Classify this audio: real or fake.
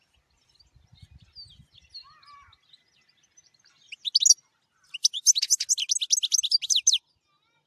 real